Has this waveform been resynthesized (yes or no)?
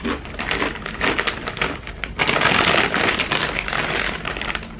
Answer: no